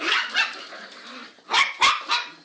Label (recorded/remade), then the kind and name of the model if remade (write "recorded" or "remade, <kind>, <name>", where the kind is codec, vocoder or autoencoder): recorded